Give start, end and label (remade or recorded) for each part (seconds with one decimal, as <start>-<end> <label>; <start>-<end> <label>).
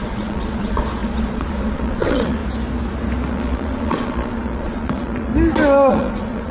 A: 0.0-2.4 remade; 2.4-3.3 recorded; 3.3-5.3 remade; 5.3-5.9 recorded; 5.9-6.5 remade